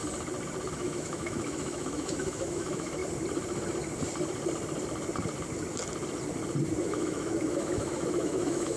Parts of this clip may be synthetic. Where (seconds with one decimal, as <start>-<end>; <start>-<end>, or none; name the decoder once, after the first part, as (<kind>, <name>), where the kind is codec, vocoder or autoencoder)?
0.7-3.0 (autoencoder, DAC-VAE); 6.8-8.8